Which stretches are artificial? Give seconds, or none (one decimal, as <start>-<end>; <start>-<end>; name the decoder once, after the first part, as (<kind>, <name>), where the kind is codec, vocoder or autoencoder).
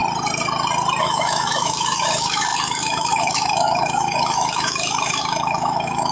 1.0-6.1 (autoencoder, DAC-VAE)